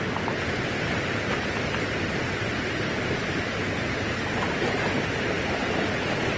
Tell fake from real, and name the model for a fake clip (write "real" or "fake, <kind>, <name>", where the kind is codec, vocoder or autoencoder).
real